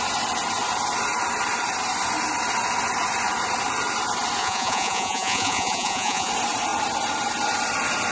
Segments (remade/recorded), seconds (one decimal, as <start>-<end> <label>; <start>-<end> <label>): 0.0-4.4 recorded; 4.4-6.3 remade; 6.3-8.1 recorded